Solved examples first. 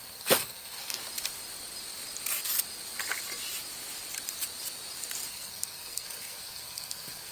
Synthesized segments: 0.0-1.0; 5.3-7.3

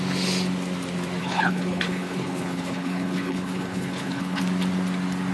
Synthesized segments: 1.2-4.4

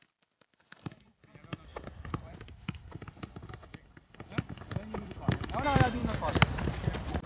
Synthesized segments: 6.0-6.6

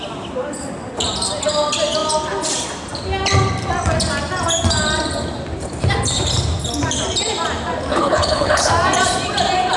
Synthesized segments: 7.9-8.7

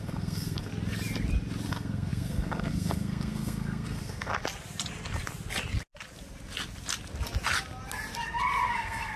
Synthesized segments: 0.0-0.7; 1.7-4.3; 8.7-9.2

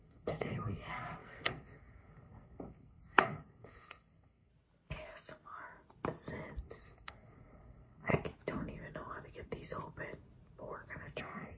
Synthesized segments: 0.0-4.5; 6.6-8.1; 11.2-11.6